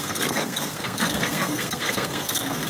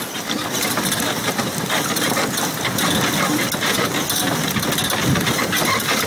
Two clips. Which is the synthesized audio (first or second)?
first